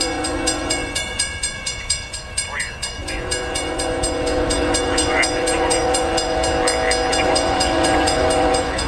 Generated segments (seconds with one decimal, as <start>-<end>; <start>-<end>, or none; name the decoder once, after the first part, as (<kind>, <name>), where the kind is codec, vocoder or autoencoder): 0.0-6.4 (vocoder, Vocos); 7.1-8.9